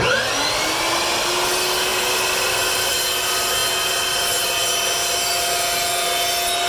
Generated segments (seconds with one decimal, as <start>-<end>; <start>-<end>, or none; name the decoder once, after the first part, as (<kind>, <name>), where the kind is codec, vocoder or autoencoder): none